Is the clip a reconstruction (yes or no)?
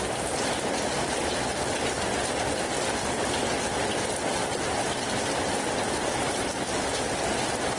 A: no